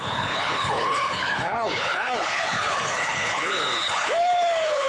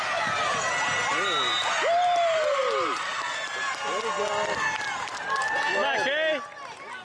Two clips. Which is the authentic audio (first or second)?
second